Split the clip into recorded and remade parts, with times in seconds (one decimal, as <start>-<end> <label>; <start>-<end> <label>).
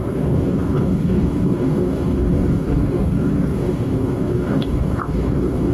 0.0-5.7 remade